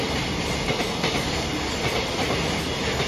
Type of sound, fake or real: real